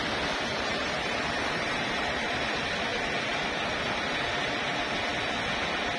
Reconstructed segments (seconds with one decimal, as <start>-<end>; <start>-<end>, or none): 0.5-2.3

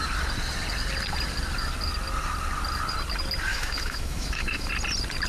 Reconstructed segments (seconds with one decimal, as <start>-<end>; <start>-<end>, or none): 3.5-4.7

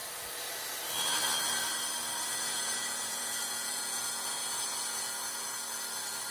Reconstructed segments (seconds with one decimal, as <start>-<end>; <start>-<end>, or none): 2.3-5.6

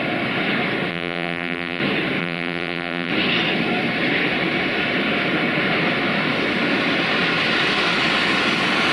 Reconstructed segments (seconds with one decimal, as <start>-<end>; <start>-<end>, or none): 0.9-1.8; 2.2-3.1